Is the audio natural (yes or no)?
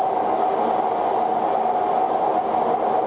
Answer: yes